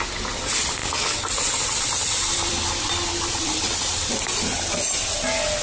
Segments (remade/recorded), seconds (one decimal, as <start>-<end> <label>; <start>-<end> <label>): 0.0-0.8 recorded; 0.8-4.2 remade; 4.2-5.6 recorded